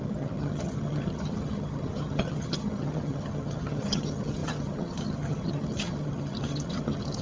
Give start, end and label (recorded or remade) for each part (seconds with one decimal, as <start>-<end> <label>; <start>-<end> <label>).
0.0-7.2 remade